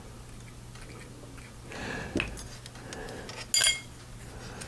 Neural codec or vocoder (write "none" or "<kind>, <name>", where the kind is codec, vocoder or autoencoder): none